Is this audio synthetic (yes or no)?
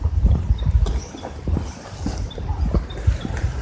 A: no